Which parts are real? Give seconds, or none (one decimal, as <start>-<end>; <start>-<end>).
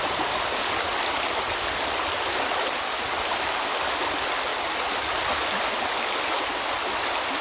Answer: 0.0-7.4